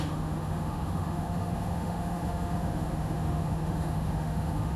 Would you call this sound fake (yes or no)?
yes